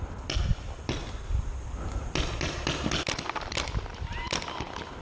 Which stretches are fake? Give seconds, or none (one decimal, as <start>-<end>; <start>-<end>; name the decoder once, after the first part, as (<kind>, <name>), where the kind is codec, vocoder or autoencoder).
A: none